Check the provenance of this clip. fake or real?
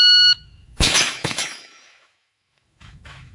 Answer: fake